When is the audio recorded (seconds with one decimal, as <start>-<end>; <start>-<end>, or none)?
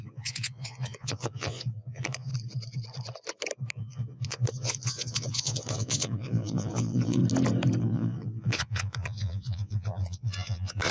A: 2.3-3.7; 7.2-7.8